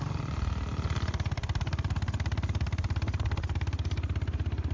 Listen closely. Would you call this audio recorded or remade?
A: recorded